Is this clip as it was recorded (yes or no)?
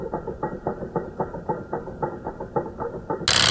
yes